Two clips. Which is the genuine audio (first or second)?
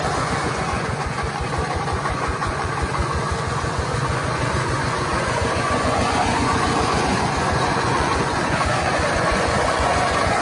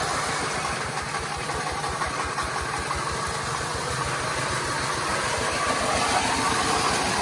second